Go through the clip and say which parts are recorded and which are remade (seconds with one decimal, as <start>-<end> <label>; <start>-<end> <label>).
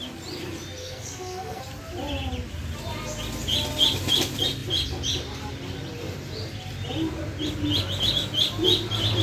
0.0-0.8 recorded; 0.8-1.6 remade; 1.6-9.2 recorded